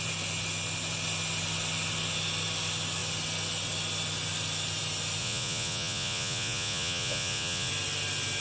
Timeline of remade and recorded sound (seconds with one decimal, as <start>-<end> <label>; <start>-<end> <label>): 0.0-5.2 recorded; 5.2-7.7 remade; 7.7-8.4 recorded